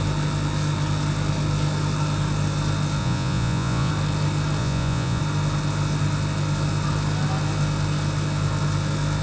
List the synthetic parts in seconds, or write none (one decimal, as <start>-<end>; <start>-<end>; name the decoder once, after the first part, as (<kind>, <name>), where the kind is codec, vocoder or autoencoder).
3.0-3.9 (vocoder, Vocos); 4.6-5.2